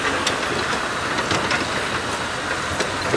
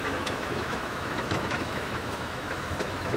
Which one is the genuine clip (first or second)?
first